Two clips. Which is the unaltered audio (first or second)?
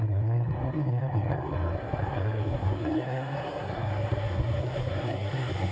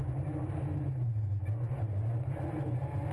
second